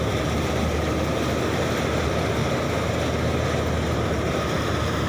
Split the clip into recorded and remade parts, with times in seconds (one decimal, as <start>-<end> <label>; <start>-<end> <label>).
0.0-2.4 remade; 2.4-4.3 recorded; 4.3-5.1 remade